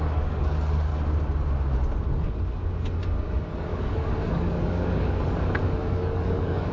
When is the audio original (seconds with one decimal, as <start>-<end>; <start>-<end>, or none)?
0.9-3.6